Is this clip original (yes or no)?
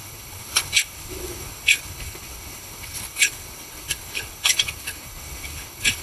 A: no